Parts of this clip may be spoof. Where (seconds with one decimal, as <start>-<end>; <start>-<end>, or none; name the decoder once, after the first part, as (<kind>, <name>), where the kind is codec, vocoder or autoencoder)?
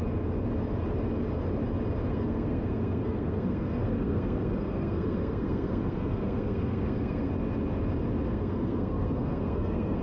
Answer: 2.1-7.3 (codec, SNAC); 8.3-10.0